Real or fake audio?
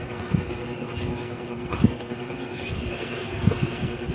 fake